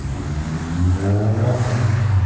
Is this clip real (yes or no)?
no